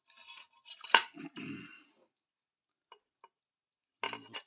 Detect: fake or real real